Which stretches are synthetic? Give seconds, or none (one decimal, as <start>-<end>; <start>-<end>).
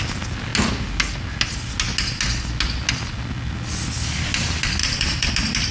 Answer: 4.8-5.3